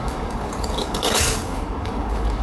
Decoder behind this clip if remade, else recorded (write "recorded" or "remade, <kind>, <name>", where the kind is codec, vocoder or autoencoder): remade, codec, DAC